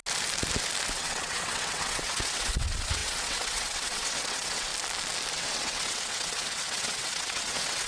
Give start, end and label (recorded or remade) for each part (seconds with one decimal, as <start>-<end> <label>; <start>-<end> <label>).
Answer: 0.0-0.9 recorded; 0.9-4.7 remade; 4.7-5.3 recorded; 5.3-7.9 remade